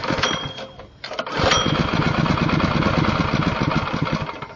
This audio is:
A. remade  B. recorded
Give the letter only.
B